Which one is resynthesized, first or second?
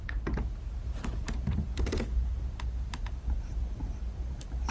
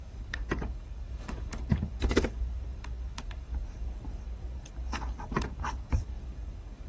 second